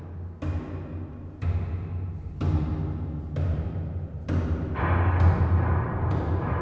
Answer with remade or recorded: recorded